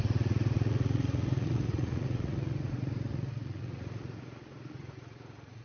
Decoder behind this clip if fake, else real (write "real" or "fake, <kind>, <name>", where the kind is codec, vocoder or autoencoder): fake, vocoder, Vocos